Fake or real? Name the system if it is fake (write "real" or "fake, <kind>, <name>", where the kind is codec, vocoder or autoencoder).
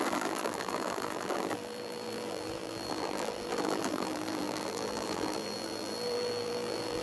fake, vocoder, BigVGAN v2